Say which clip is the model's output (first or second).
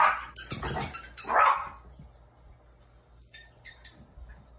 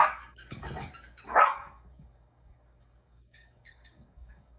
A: second